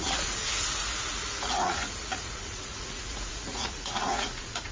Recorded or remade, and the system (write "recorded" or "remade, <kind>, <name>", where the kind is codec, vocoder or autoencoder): remade, vocoder, Vocos